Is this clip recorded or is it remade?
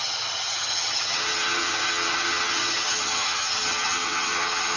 remade